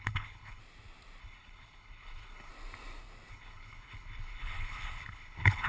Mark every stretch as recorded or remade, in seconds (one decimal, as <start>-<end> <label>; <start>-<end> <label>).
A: 0.0-0.6 remade; 0.6-1.2 recorded; 1.2-2.5 remade; 2.5-3.3 recorded; 3.3-5.7 remade